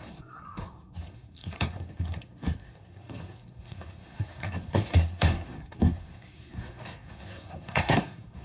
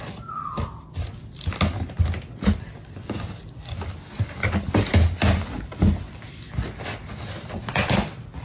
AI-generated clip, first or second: first